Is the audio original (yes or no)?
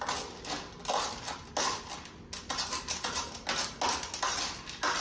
yes